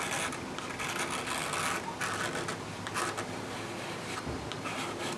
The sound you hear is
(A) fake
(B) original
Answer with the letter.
B